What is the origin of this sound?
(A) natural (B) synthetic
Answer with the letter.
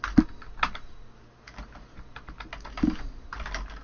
A